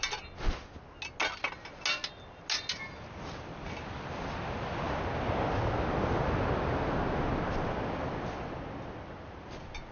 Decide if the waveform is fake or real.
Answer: real